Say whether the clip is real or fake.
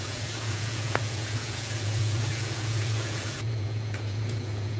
fake